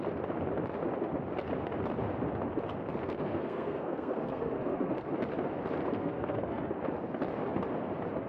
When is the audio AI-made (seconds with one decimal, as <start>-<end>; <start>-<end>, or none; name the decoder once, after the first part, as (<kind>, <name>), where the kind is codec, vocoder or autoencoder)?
3.0-5.1 (codec, SNAC); 6.0-6.7